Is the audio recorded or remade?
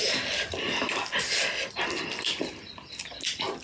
recorded